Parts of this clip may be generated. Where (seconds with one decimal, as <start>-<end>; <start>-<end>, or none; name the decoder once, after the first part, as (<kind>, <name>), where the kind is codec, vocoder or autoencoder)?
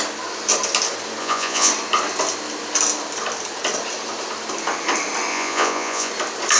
1.2-1.7 (vocoder, Vocos); 5.3-6.1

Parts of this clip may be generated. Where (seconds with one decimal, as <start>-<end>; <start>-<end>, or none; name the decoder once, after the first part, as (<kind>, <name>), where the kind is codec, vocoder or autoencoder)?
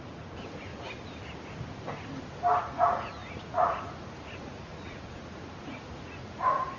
0.0-0.7 (vocoder, Vocos); 2.6-6.8